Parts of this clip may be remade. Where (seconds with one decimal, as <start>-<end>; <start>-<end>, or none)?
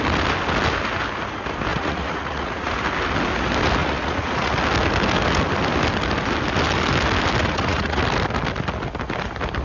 1.7-2.7; 3.8-4.5; 7.4-8.0